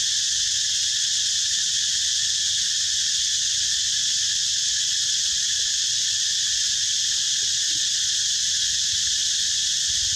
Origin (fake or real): real